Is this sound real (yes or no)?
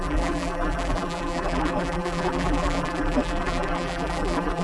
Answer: no